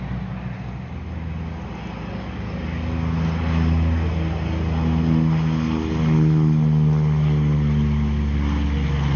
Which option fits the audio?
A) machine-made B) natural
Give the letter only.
B